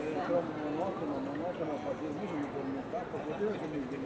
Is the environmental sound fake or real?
real